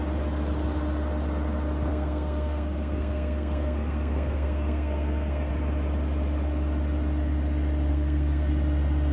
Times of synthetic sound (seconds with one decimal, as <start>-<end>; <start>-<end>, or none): 1.9-5.5; 7.9-8.5